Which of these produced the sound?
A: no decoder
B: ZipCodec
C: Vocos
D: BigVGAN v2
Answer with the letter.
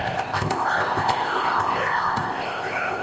B